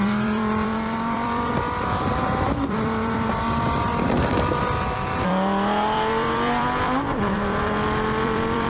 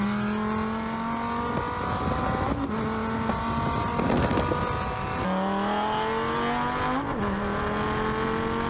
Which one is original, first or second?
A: second